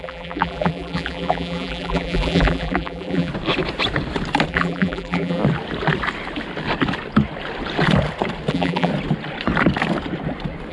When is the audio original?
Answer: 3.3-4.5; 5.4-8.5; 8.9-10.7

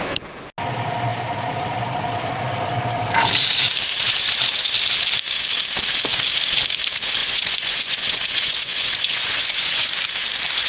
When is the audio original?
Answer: 0.0-7.2; 9.9-10.7

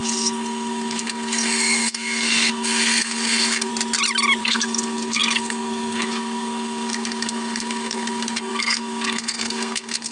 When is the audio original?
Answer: 3.7-4.4